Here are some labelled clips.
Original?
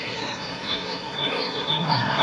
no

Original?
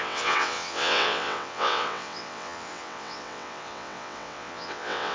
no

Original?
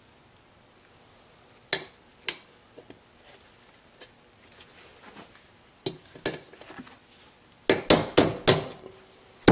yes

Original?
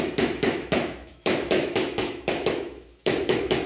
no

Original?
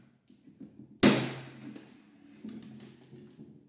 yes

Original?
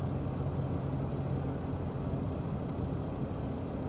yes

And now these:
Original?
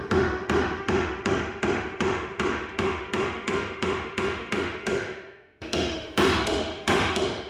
no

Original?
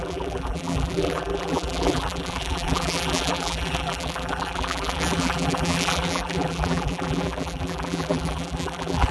no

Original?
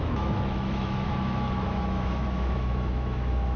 no